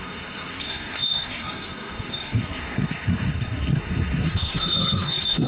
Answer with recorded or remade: remade